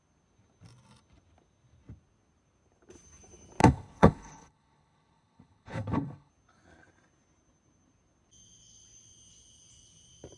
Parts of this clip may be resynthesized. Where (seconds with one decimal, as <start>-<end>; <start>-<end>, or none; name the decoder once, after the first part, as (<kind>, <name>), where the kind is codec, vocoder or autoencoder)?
3.6-6.3 (codec, HILCodec)